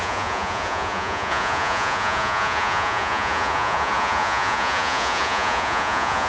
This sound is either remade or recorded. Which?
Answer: remade